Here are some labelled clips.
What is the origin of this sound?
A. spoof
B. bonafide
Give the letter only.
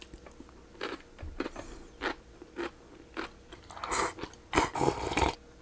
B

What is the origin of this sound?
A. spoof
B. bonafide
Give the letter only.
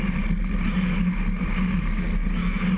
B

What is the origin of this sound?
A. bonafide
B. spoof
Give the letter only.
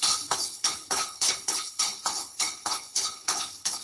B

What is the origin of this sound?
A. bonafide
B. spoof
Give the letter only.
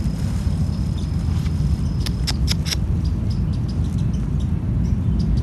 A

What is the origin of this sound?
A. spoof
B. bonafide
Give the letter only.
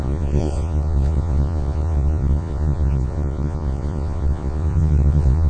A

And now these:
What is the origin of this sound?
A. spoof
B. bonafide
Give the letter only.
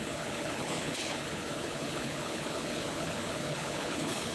A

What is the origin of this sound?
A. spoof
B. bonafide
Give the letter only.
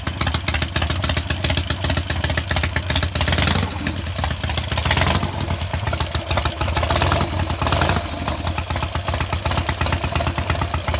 B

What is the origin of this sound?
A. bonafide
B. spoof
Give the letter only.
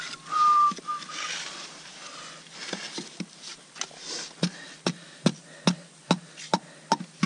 A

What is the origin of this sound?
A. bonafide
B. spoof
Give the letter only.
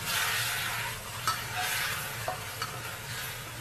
A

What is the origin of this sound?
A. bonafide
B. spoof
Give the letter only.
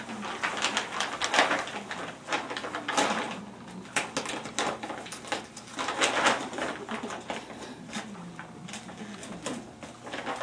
A